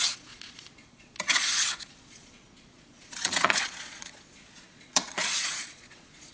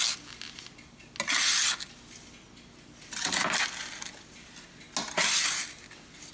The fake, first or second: first